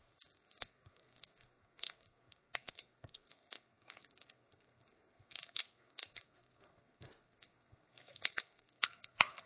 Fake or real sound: fake